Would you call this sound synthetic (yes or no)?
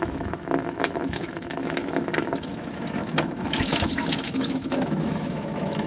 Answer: yes